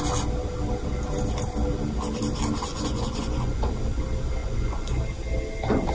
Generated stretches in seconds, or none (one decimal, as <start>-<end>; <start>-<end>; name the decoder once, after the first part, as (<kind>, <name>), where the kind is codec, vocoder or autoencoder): 2.7-3.7 (vocoder, Vocos); 4.4-5.0